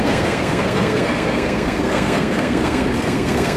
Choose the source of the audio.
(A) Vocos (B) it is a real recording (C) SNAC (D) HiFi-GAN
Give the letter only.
C